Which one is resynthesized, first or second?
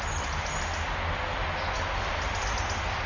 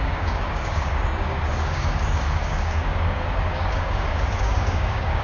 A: second